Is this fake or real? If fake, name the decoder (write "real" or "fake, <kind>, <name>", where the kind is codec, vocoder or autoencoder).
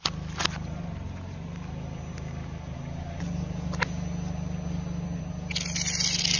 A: real